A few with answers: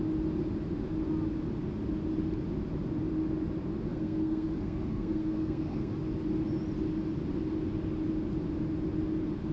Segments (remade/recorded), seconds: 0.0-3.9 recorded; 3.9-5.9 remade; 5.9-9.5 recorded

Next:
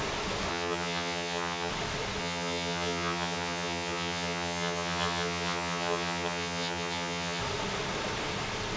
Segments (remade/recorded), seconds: 0.0-0.5 recorded; 0.5-1.7 remade; 1.7-2.2 recorded; 2.2-7.4 remade; 7.4-8.8 recorded

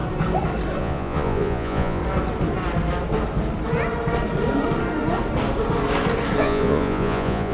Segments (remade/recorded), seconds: 0.0-0.8 recorded; 0.8-2.0 remade; 2.0-6.4 recorded; 6.4-7.5 remade

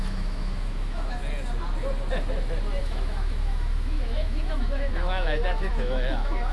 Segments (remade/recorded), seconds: 0.0-1.2 remade; 1.2-2.8 recorded; 2.8-6.5 remade

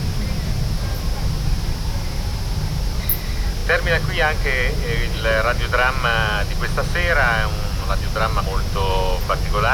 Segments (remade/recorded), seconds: 0.0-9.7 recorded

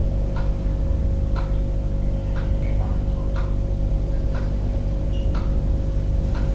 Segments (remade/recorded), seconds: 0.0-6.5 recorded

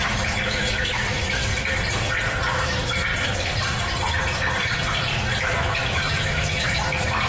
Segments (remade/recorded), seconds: 0.0-1.5 remade; 1.5-2.5 recorded; 2.5-3.1 remade; 3.1-5.4 recorded; 5.4-7.3 remade

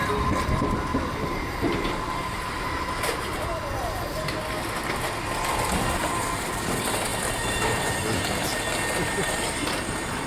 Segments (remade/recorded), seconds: 0.0-0.9 recorded; 0.9-4.2 remade; 4.2-6.0 recorded; 6.0-6.6 remade; 6.6-10.3 recorded